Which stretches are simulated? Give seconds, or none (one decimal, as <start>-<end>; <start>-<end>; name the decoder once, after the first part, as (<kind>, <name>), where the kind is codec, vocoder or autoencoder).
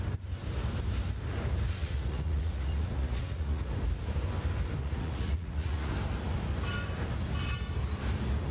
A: 1.8-3.7 (vocoder, Vocos); 4.8-5.9